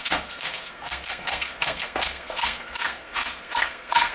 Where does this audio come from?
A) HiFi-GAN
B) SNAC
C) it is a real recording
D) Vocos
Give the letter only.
B